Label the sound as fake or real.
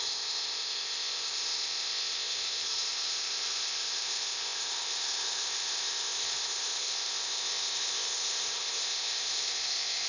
fake